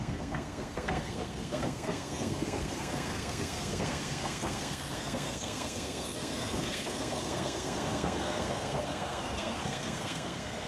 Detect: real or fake fake